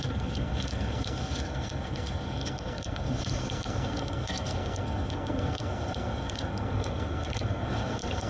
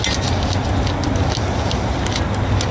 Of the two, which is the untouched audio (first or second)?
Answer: second